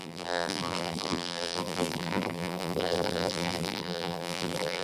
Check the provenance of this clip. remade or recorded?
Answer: remade